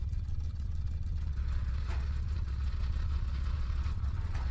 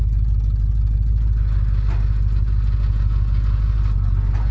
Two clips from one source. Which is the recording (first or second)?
second